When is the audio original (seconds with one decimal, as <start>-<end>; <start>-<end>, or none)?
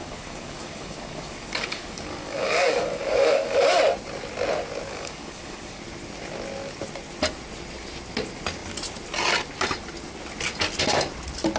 3.8-4.9; 5.8-11.6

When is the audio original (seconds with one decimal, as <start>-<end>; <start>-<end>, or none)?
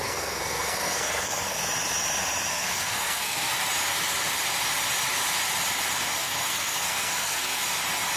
1.6-2.5; 3.5-6.2; 7.6-8.2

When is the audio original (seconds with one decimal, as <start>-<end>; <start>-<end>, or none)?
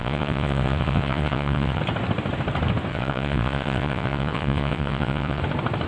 1.8-2.9; 5.4-5.9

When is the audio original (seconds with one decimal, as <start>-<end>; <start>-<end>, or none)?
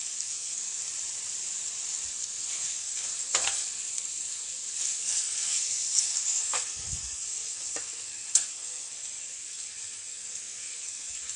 0.8-2.1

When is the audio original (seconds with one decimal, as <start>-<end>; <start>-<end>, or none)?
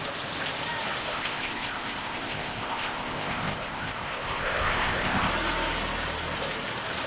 0.0-1.0; 5.3-7.1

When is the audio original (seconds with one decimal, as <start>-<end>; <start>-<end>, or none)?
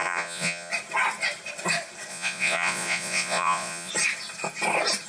0.7-2.1; 3.9-5.1